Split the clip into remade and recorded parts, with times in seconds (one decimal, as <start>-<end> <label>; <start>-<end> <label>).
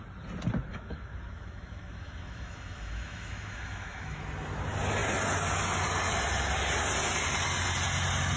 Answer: 0.0-0.7 recorded; 0.7-4.2 remade; 4.2-8.4 recorded